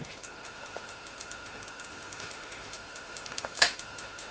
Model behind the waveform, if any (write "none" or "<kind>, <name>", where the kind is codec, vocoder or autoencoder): autoencoder, DAC-VAE